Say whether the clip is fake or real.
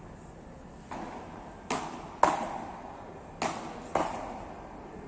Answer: real